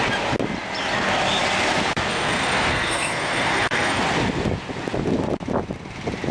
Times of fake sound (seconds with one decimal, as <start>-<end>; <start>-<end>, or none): 2.1-4.0

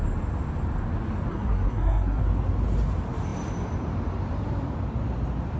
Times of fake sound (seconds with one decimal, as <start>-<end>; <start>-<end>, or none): 1.3-2.2

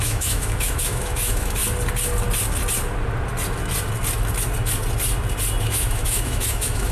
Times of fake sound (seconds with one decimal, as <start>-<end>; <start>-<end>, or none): 0.0-1.6; 5.6-6.9

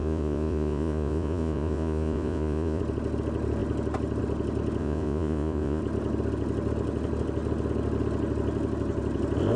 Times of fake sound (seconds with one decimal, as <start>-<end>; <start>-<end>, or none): 0.0-2.8; 4.8-5.8

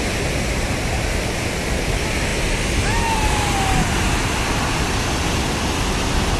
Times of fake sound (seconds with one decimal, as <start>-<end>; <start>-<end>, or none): none

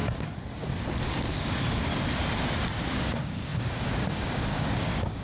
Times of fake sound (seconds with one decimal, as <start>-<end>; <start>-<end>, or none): 1.0-1.9; 2.9-5.2

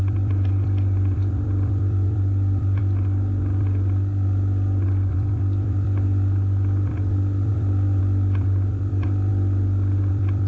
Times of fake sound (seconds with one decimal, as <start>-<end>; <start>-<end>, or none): 0.0-2.8; 5.1-9.3; 10.1-10.5